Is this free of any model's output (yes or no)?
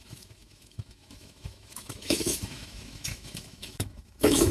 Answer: no